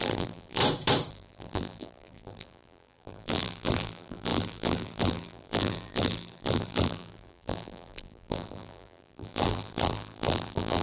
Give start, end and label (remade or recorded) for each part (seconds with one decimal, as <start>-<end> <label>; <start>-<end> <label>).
0.0-0.6 remade; 0.6-1.1 recorded; 1.1-10.8 remade